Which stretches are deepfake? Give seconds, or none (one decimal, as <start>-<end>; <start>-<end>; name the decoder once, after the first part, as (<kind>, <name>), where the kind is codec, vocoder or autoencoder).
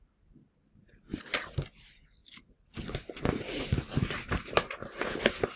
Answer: 2.2-4.7 (vocoder, BigVGAN v2)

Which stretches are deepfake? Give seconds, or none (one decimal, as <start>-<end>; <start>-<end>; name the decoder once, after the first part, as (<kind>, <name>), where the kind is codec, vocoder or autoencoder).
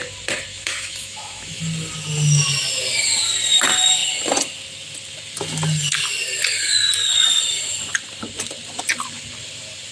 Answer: 0.5-1.6 (autoencoder, DAC-VAE)